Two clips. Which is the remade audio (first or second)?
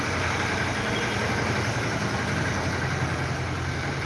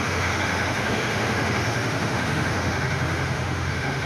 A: second